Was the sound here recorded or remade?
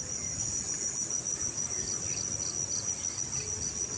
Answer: recorded